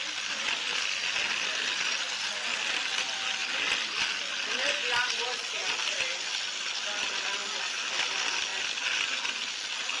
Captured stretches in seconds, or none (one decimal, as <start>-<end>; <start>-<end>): 0.0-10.0

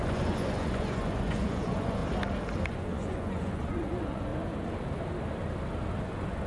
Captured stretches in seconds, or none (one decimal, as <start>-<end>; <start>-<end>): 2.0-2.7; 4.3-6.0

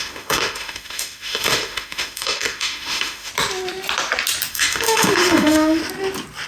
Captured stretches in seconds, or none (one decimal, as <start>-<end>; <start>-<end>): 3.3-4.5; 5.8-6.5